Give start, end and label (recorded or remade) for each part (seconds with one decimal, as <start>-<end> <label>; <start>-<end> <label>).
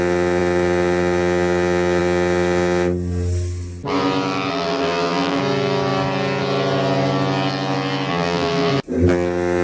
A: 0.0-4.5 recorded; 4.5-5.4 remade; 5.4-8.1 recorded; 8.1-8.7 remade; 8.7-9.6 recorded